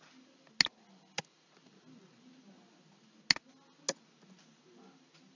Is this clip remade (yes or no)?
no